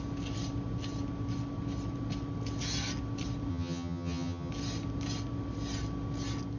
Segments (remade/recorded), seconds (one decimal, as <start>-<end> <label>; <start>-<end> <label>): 0.0-3.5 recorded; 3.5-4.5 remade; 4.5-6.6 recorded